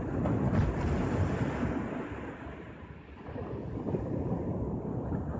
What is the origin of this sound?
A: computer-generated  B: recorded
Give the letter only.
B